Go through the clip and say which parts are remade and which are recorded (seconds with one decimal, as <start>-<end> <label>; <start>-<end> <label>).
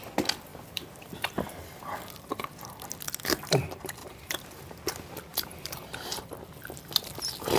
0.0-0.5 recorded; 0.5-1.1 remade; 1.1-4.0 recorded; 4.0-4.6 remade; 4.6-5.3 recorded; 5.3-6.3 remade; 6.3-7.6 recorded